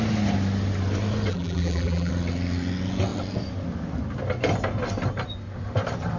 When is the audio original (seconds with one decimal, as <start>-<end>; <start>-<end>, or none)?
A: 0.0-1.3; 2.1-6.2